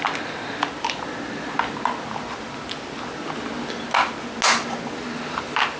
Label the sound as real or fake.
real